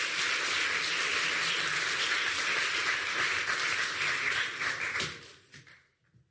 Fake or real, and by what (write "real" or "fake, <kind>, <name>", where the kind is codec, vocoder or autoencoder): real